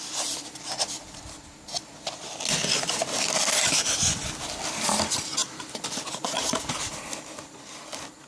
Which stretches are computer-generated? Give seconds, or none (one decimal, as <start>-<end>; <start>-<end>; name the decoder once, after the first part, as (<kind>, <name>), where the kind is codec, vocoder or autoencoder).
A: none